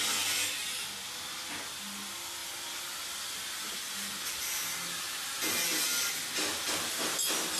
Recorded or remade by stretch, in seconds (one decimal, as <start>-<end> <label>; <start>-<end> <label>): 0.0-7.6 recorded

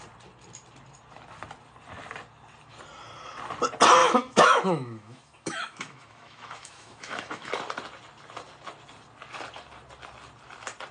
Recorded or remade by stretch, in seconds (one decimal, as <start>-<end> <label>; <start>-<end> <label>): 0.0-4.0 recorded; 4.0-7.5 remade; 7.5-10.9 recorded

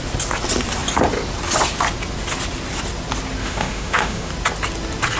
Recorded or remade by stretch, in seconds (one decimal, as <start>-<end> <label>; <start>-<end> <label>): 0.0-3.4 recorded; 3.4-4.3 remade; 4.3-5.2 recorded